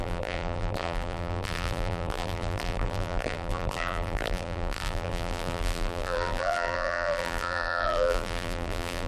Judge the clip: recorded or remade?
remade